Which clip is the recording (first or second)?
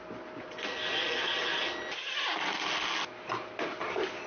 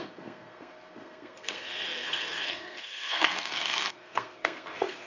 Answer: first